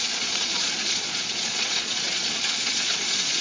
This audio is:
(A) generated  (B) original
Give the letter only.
A